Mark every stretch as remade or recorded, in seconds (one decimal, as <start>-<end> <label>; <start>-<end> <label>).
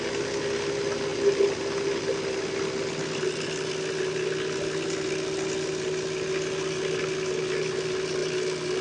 0.0-8.8 recorded